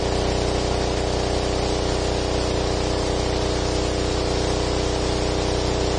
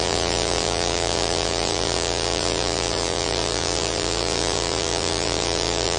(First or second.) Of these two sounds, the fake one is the second